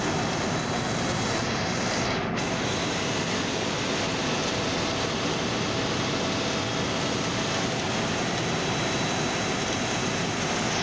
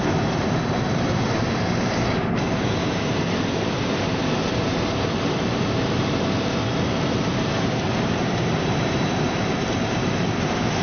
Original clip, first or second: first